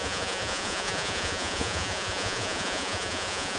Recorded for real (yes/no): no